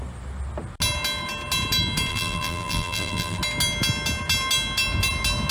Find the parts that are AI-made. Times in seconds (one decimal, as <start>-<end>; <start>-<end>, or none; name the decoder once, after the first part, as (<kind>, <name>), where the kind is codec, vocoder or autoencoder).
2.1-3.4 (vocoder, BigVGAN v2)